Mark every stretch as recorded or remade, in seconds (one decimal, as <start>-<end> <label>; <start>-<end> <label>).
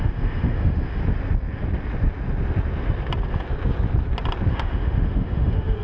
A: 0.0-1.0 remade; 1.0-4.5 recorded; 4.5-5.8 remade